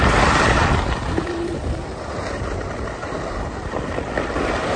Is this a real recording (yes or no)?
yes